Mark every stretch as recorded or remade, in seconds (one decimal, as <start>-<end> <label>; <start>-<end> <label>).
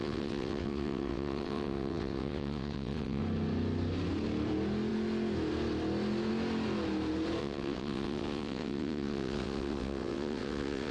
0.0-3.2 remade; 3.2-7.4 recorded; 7.4-10.9 remade